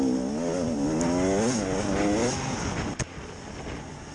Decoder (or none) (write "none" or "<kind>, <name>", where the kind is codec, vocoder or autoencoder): none